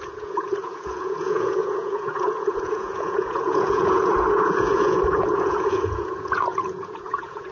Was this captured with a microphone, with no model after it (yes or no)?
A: no